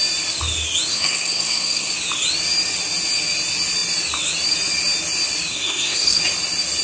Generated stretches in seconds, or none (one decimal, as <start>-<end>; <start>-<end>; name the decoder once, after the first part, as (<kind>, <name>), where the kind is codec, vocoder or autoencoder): 0.9-1.9 (codec, SNAC); 5.5-6.2